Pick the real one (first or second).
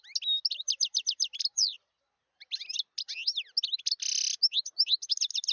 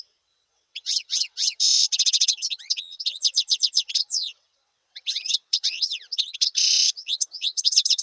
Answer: first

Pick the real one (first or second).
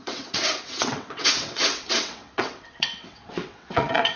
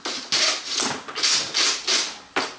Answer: second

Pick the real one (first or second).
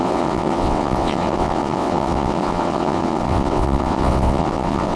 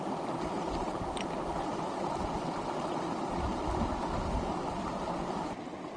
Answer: second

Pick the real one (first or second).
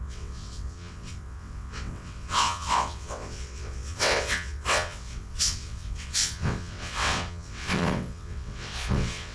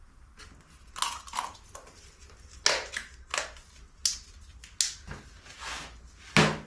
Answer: second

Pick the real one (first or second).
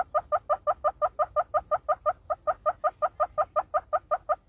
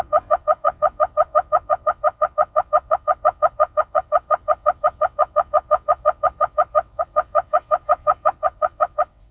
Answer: first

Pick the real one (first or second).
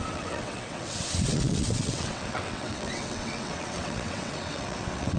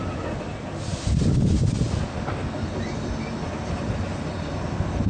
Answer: second